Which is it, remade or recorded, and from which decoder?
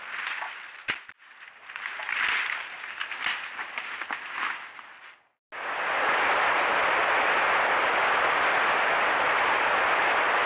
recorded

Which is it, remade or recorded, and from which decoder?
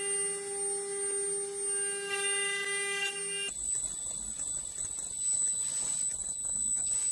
recorded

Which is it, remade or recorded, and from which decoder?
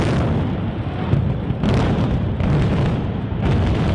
remade, vocoder, BigVGAN v2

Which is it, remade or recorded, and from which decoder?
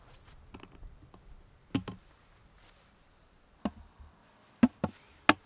recorded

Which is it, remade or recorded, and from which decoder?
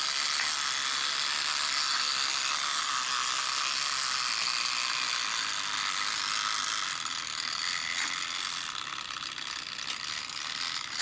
recorded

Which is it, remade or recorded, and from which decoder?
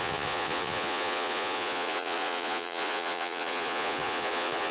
remade, vocoder, Vocos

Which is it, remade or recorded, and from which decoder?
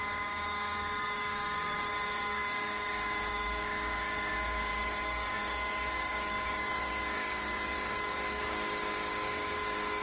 remade, codec, DAC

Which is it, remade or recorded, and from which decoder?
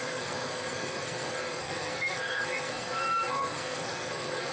remade, codec, SNAC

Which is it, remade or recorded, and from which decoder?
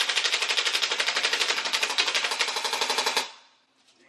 recorded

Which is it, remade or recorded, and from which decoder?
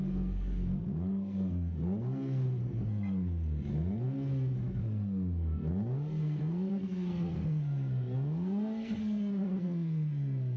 remade, codec, SNAC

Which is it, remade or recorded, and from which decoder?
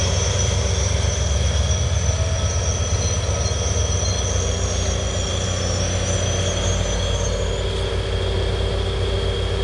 recorded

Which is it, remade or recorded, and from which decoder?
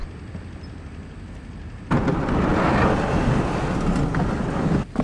recorded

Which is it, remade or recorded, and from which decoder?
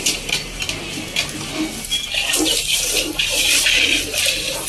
recorded